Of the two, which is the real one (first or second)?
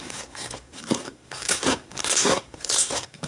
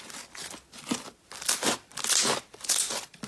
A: second